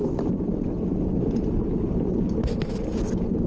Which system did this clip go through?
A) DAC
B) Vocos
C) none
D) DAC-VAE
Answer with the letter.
C